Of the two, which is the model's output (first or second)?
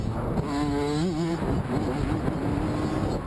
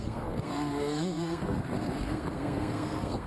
second